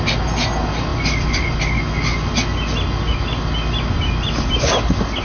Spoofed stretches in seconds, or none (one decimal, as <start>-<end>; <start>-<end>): none